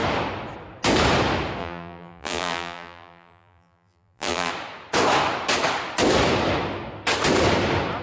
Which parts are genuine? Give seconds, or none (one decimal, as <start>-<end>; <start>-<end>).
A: 0.0-1.6; 4.5-8.0